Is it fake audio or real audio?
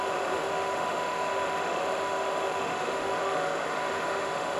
fake